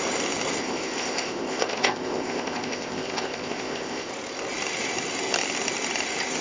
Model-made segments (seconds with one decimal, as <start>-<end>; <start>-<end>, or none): 0.6-4.1